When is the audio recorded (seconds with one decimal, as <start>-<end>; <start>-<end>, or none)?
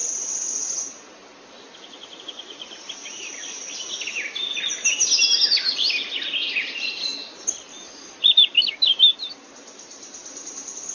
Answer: 0.0-10.9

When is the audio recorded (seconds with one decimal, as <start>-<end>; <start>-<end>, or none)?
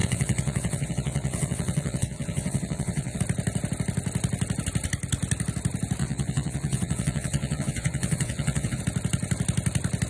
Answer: 3.2-6.0; 8.8-10.1